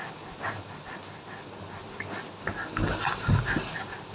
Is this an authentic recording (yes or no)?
yes